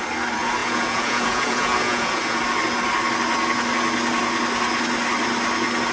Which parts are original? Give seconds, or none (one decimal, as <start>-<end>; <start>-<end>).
0.0-0.6; 2.4-5.9